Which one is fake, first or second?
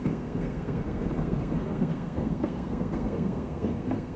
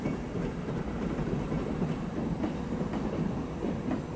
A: first